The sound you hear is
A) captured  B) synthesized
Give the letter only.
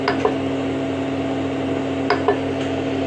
A